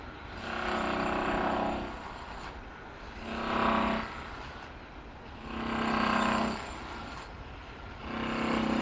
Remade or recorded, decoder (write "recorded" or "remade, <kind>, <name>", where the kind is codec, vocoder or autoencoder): recorded